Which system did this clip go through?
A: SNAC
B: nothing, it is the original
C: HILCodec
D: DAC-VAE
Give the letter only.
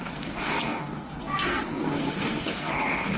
A